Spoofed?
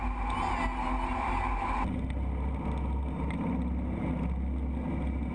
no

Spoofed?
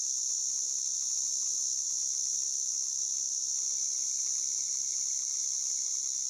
yes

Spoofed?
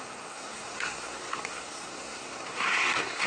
yes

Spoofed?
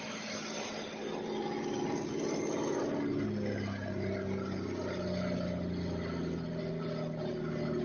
no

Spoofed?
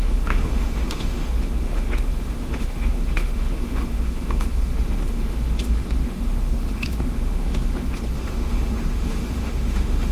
yes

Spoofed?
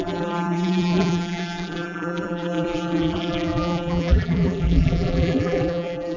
yes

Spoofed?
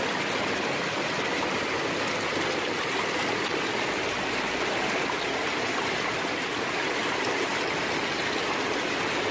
no